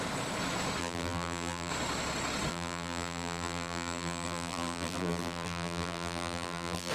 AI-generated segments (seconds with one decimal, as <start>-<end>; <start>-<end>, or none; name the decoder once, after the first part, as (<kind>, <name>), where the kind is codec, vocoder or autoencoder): 0.8-1.7 (vocoder, BigVGAN v2); 2.5-6.9